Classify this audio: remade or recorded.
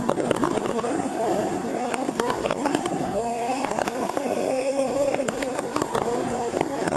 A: remade